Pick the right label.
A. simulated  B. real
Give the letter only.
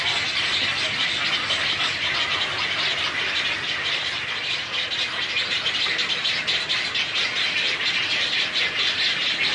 B